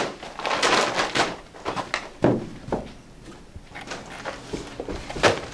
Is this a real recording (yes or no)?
yes